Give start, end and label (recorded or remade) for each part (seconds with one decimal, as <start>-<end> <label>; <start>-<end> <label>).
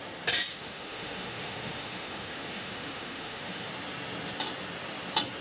0.0-0.5 recorded; 0.5-3.7 remade; 3.7-5.4 recorded